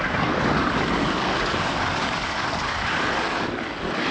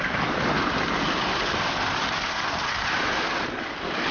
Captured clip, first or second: second